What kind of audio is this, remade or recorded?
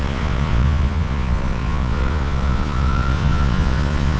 remade